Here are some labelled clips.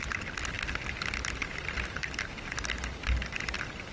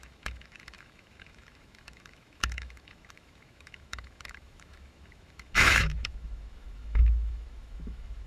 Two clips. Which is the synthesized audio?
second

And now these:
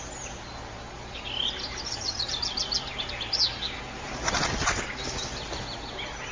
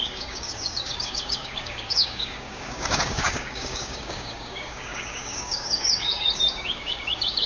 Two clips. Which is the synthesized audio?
second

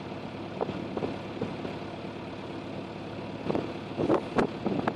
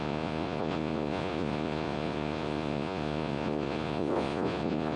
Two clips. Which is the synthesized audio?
second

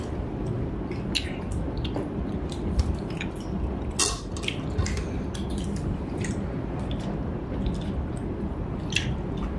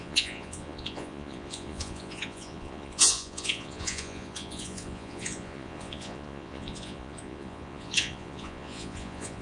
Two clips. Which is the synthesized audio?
second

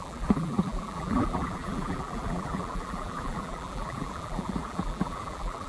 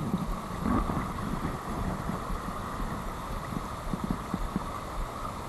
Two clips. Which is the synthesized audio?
first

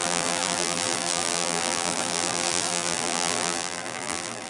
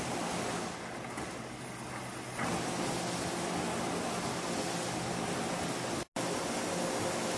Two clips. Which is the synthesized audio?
first